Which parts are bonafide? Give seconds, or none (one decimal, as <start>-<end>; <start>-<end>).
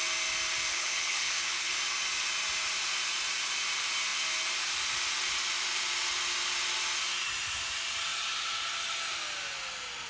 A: 0.0-0.7; 1.8-10.1